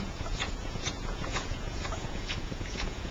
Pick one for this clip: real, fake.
fake